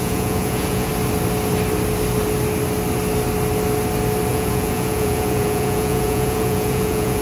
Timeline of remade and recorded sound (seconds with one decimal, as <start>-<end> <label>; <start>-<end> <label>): 0.0-0.9 remade; 0.9-4.3 recorded; 4.3-7.2 remade